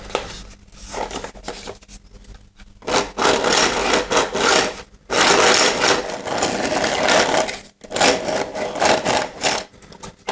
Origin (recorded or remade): recorded